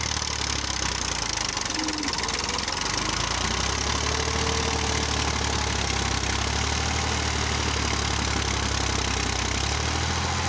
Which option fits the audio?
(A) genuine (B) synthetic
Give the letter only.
A